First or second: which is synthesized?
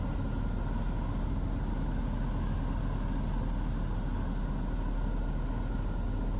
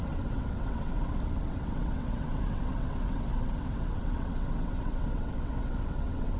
second